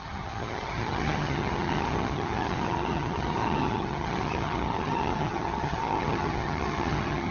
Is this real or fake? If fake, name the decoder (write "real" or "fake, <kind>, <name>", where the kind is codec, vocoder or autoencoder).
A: fake, vocoder, HiFi-GAN